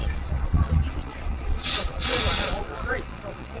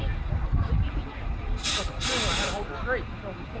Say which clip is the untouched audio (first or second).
second